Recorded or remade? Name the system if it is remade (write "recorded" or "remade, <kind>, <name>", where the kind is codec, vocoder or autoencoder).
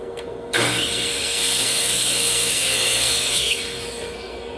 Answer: remade, codec, SNAC